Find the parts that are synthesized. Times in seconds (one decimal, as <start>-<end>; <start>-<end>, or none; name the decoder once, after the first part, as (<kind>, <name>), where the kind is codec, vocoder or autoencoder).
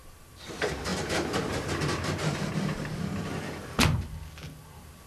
0.0-0.5 (vocoder, BigVGAN v2); 0.9-3.3